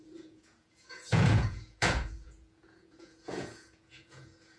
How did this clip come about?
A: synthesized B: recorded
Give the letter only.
A